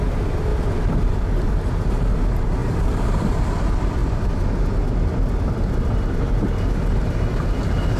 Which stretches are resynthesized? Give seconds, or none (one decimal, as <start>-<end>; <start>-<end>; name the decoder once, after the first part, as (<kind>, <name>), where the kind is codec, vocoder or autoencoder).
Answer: 0.5-1.2 (vocoder, BigVGAN v2); 2.6-3.4